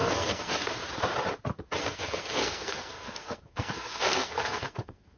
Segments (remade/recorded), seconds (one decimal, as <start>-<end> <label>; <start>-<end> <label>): 0.0-0.7 remade; 0.7-1.8 recorded; 1.8-5.2 remade